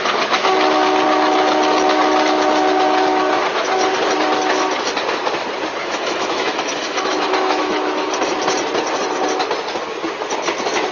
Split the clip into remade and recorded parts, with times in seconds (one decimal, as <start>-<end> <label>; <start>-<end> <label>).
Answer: 0.0-5.8 recorded; 5.8-8.1 remade; 8.1-10.9 recorded